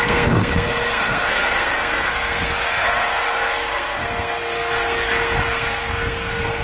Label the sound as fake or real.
fake